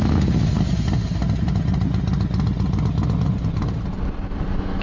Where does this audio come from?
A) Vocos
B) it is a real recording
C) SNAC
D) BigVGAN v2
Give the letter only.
B